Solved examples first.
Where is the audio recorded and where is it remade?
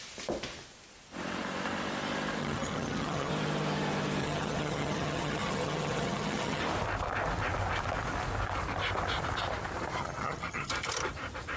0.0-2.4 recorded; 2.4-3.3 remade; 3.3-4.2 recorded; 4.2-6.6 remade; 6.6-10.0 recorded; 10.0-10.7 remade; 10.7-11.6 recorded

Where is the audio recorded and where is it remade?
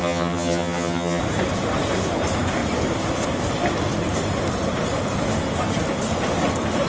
0.0-1.2 remade; 1.2-6.9 recorded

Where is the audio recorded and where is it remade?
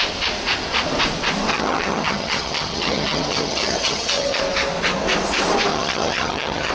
0.0-1.5 recorded; 1.5-4.4 remade; 4.4-5.7 recorded; 5.7-6.7 remade